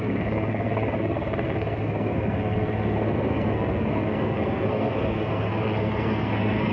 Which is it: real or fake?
fake